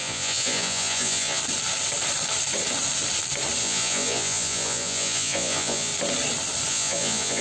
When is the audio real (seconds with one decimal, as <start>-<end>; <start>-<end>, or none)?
1.4-3.6; 5.9-6.7